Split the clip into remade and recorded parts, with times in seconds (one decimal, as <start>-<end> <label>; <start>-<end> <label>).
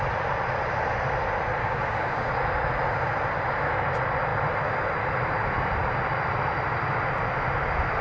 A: 0.0-1.6 recorded; 1.6-2.3 remade; 2.3-8.0 recorded